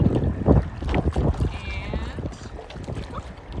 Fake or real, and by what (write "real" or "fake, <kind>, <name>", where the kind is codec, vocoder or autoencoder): real